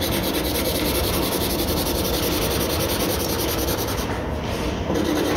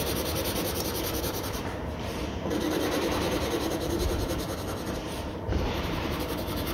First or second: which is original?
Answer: first